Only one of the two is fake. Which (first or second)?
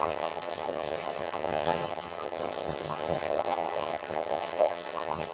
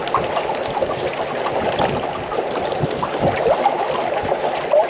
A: first